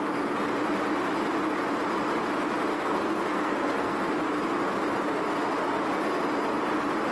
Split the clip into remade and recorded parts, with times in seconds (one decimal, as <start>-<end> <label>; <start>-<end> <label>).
0.0-2.7 recorded; 2.7-4.1 remade; 4.1-7.1 recorded